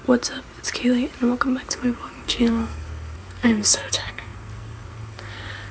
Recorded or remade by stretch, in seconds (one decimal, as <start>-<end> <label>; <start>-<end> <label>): 0.0-1.7 recorded; 1.7-5.7 remade

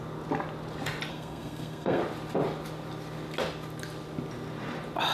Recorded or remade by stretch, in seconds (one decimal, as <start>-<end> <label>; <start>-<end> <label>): 0.0-1.1 recorded; 1.1-2.0 remade; 2.0-5.1 recorded

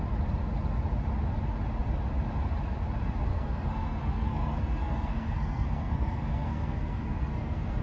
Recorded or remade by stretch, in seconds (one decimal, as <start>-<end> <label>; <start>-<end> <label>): 0.0-3.3 recorded; 3.3-7.8 remade

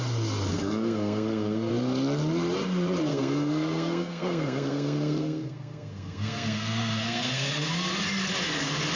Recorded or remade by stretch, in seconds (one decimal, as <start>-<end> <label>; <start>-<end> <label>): 0.0-0.5 recorded; 0.5-1.7 remade; 1.7-3.1 recorded; 3.1-7.7 remade; 7.7-9.0 recorded